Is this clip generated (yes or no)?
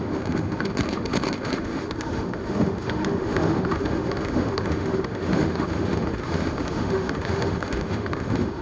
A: yes